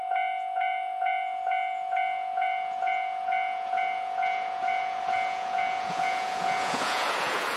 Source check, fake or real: fake